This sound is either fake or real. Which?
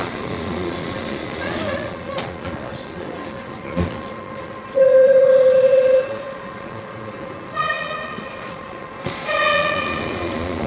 fake